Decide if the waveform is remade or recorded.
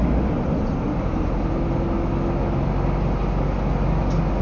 recorded